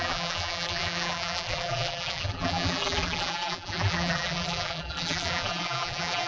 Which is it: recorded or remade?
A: remade